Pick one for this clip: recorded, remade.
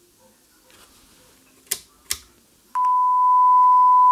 recorded